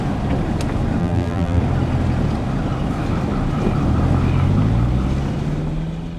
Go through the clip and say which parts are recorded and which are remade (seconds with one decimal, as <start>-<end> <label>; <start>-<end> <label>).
0.0-1.0 recorded; 1.0-1.6 remade; 1.6-6.2 recorded